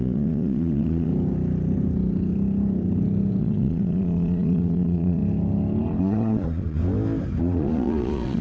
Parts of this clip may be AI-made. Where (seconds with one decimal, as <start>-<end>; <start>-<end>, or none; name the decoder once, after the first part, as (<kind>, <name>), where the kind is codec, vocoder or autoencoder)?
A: 0.0-1.1 (vocoder, Vocos); 3.4-5.2; 6.0-6.8; 7.4-8.4

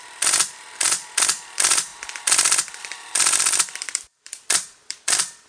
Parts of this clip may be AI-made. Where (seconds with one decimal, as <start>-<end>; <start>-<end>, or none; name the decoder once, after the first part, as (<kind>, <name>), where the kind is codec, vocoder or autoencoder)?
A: 0.0-1.9 (vocoder, BigVGAN v2); 2.8-5.5

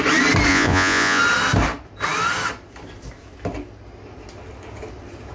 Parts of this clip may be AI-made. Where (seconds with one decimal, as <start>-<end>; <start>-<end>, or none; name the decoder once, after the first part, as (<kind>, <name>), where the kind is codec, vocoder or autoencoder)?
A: 0.5-1.2 (vocoder, Vocos)

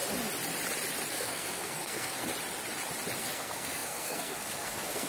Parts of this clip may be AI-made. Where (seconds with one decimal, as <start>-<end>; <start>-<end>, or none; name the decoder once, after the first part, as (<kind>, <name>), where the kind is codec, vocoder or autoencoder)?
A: 1.1-2.3 (codec, SNAC); 3.2-5.1

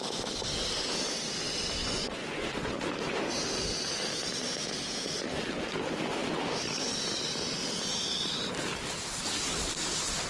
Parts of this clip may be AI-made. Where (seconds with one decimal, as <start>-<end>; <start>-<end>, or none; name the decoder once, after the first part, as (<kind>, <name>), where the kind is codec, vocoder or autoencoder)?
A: 1.8-2.7 (vocoder, Vocos)

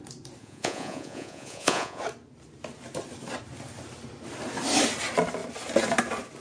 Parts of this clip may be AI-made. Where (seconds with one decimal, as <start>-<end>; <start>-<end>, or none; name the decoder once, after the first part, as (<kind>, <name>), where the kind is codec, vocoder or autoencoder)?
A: 0.4-2.0 (vocoder, Vocos)

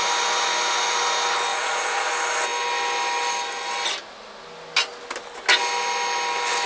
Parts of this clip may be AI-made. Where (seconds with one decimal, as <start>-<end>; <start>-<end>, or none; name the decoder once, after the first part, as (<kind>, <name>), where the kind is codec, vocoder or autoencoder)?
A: 1.5-2.1 (vocoder, Vocos)

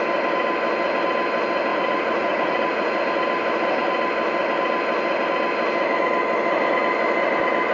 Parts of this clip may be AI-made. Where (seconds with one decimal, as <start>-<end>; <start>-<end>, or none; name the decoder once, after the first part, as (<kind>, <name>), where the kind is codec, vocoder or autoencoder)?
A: 1.7-3.0 (vocoder, Vocos)